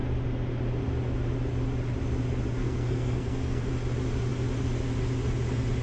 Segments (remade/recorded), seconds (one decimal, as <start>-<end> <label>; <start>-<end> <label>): 0.0-2.6 recorded; 2.6-3.7 remade; 3.7-5.8 recorded